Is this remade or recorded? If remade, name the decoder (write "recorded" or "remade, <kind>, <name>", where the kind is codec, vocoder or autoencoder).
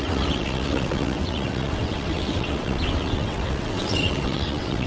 remade, vocoder, WaveNeXt